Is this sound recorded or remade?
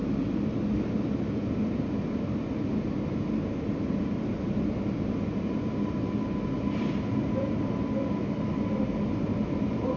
recorded